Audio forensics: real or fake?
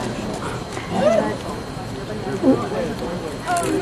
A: real